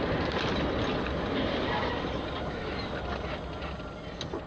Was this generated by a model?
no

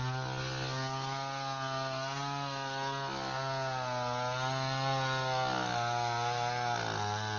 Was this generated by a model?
no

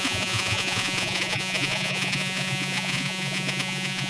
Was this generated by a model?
yes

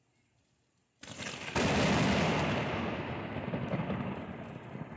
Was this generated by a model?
no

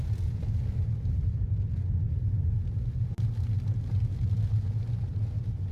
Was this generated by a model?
no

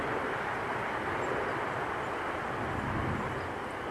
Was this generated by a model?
yes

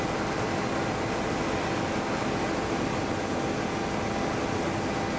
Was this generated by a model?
no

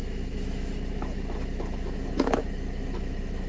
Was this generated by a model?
yes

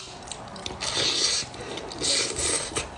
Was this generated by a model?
no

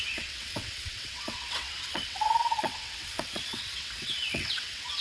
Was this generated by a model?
yes